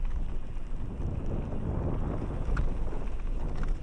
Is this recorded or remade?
recorded